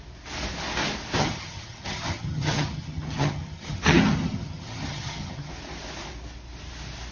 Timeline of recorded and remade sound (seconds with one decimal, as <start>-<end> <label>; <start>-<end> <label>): 0.0-1.2 recorded; 1.2-5.5 remade; 5.5-7.1 recorded